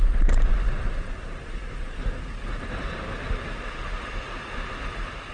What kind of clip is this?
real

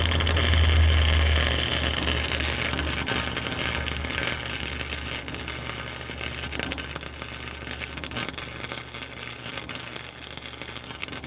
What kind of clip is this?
real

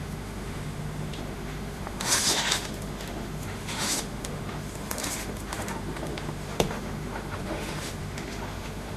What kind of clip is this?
fake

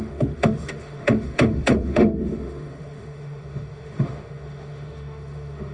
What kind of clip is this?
fake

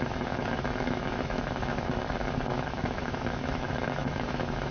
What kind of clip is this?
fake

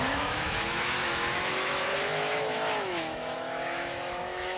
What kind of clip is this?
fake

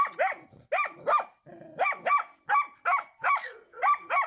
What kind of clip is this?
real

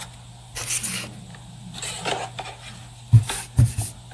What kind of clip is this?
real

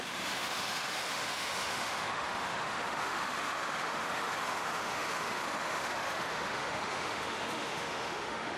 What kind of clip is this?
fake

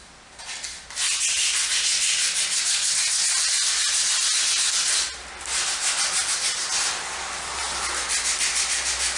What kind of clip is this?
real